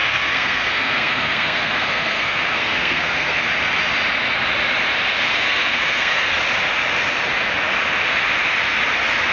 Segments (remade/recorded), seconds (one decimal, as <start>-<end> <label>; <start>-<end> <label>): 0.0-3.5 remade; 3.5-5.3 recorded; 5.3-6.3 remade; 6.3-9.3 recorded